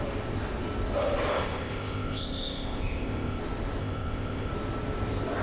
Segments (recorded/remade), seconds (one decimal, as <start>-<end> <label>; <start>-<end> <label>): 0.0-1.3 recorded; 1.3-3.4 remade; 3.4-3.8 recorded; 3.8-4.5 remade; 4.5-5.4 recorded